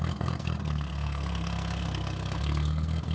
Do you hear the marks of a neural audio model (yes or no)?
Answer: yes